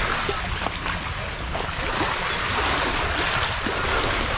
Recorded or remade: recorded